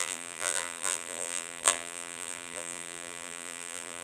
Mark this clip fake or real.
fake